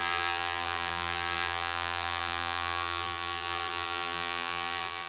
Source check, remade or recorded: remade